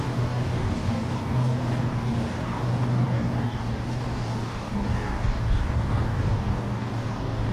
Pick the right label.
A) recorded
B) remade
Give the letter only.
B